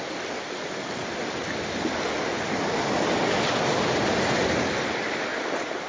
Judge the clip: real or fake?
real